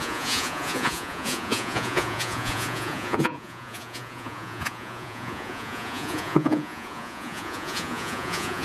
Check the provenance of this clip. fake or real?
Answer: fake